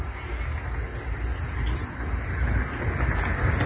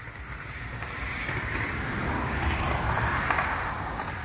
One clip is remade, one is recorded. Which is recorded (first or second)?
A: first